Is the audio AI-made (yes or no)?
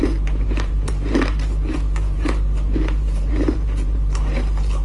yes